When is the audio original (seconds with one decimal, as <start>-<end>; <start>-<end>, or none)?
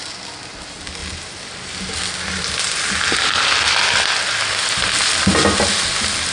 0.0-6.3